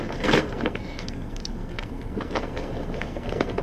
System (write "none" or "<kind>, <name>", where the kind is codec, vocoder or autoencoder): codec, SNAC